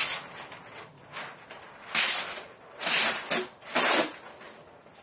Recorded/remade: recorded